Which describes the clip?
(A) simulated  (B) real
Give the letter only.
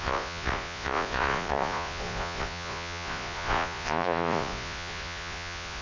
A